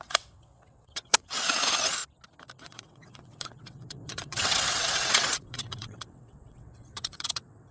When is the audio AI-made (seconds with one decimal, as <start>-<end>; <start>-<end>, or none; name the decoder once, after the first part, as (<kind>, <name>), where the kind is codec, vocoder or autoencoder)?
0.0-2.0 (vocoder, WaveNeXt); 2.6-7.7